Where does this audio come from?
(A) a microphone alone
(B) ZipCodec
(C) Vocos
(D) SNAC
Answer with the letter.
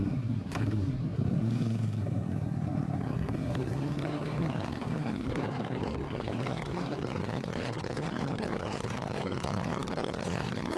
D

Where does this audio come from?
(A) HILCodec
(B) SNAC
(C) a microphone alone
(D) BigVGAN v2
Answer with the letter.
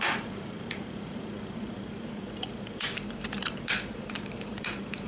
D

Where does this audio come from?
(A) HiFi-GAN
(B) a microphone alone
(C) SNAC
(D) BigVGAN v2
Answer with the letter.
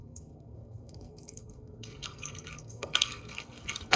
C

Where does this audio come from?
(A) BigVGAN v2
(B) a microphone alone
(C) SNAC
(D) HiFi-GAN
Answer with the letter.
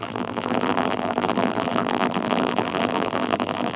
A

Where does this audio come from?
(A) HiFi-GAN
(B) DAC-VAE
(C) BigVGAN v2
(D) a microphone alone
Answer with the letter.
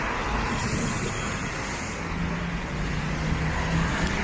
D